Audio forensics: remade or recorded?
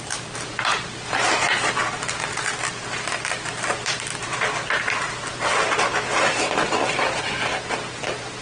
recorded